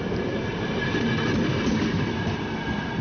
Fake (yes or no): no